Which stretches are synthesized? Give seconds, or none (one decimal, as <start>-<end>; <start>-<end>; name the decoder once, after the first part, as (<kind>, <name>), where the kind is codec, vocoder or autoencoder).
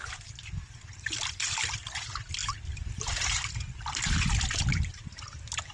none